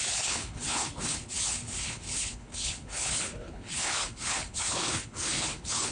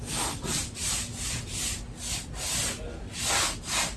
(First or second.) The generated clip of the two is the first